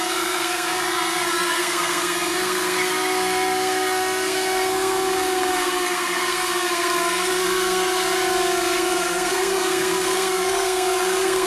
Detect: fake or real fake